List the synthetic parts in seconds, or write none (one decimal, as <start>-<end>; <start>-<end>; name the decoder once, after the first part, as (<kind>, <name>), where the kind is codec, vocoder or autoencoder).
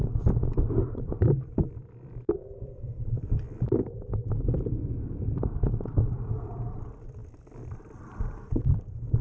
0.9-7.2 (vocoder, BigVGAN v2); 7.8-9.2